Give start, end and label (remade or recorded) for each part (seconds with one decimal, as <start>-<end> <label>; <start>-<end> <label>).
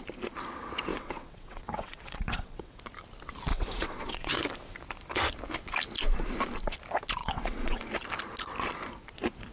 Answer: 0.0-0.9 recorded; 0.9-2.8 remade; 2.8-3.5 recorded; 3.5-4.3 remade; 4.3-7.2 recorded; 7.2-7.8 remade; 7.8-9.5 recorded